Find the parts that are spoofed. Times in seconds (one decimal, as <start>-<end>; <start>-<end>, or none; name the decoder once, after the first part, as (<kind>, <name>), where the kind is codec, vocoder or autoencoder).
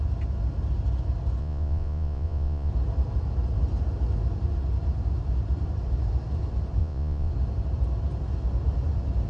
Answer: 1.4-2.7 (vocoder, Vocos); 6.8-7.3